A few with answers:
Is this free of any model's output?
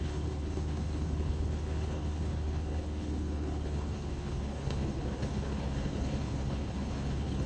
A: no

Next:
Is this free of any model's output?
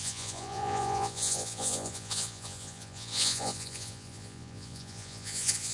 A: no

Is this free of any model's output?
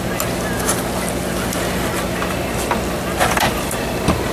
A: yes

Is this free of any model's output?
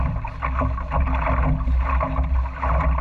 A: yes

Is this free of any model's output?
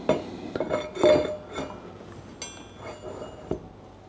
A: yes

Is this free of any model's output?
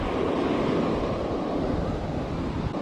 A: no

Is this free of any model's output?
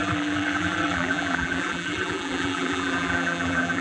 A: no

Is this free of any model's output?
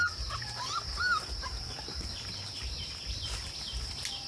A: no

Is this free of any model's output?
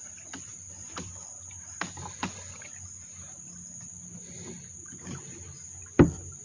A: yes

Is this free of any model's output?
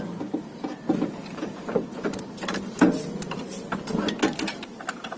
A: no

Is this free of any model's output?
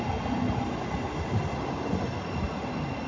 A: yes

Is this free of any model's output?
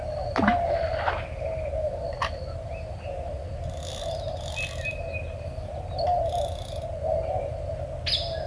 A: yes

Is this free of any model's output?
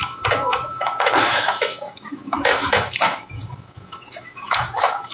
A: no